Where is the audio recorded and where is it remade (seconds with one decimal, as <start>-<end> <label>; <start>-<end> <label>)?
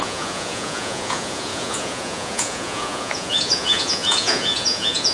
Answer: 0.0-5.1 remade